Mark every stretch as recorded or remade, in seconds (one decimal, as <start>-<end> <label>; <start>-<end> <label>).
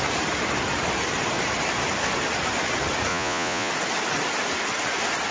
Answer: 0.0-3.1 recorded; 3.1-3.7 remade; 3.7-5.3 recorded